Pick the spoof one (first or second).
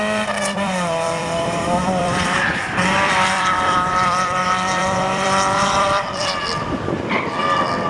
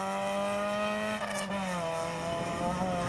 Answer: first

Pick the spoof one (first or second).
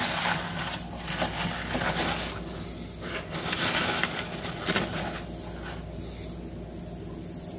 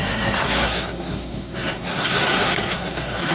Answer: second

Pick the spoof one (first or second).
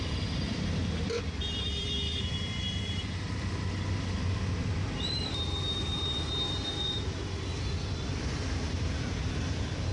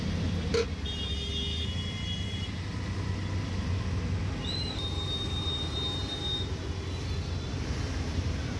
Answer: first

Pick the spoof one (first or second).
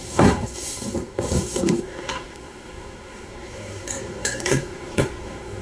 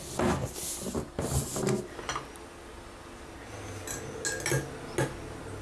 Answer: first